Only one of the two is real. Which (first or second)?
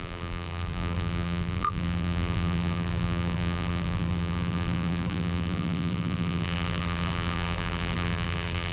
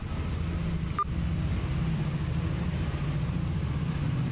second